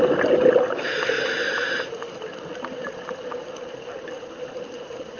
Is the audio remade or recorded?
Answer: recorded